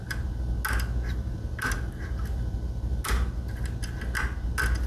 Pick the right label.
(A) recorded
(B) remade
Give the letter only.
A